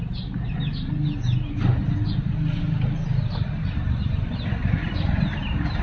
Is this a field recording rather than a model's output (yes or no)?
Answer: yes